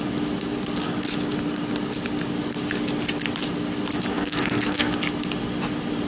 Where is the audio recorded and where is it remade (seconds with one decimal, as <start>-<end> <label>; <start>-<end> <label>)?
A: 0.0-4.1 recorded; 4.1-4.9 remade; 4.9-6.1 recorded